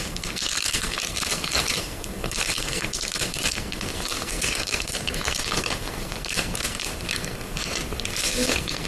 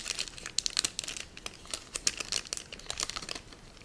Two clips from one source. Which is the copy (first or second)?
first